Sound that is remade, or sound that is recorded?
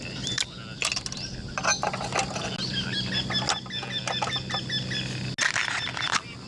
recorded